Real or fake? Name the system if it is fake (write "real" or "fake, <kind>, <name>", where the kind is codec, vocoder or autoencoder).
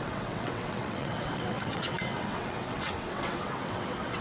fake, vocoder, WaveNeXt